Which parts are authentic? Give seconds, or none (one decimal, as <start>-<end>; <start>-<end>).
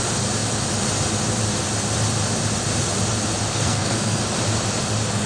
0.0-3.5; 4.2-5.3